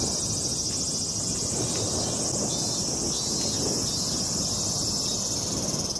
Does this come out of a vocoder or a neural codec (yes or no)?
no